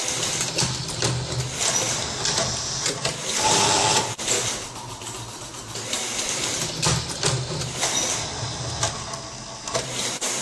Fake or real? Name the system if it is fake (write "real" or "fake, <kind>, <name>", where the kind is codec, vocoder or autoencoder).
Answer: real